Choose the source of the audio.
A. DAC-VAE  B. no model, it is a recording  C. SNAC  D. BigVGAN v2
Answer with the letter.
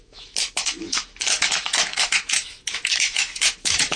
A